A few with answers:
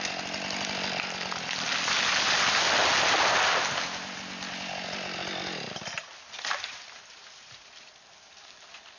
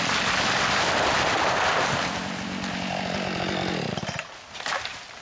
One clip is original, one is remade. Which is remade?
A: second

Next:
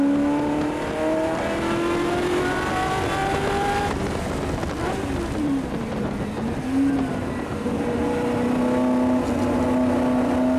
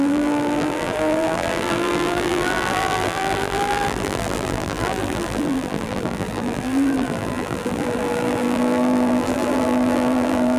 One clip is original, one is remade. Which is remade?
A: second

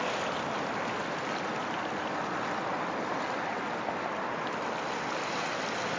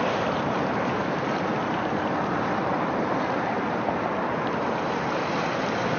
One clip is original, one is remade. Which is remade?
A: second